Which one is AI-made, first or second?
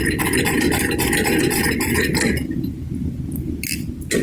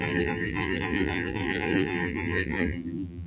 second